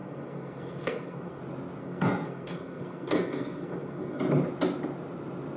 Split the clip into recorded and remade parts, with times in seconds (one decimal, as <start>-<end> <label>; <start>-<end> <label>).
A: 0.0-1.4 remade; 1.4-1.8 recorded; 1.8-4.2 remade; 4.2-5.6 recorded